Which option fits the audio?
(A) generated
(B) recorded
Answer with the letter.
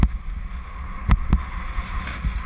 B